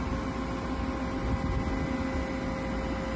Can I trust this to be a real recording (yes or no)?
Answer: yes